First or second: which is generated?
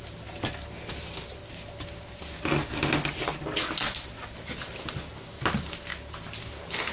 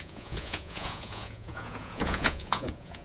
second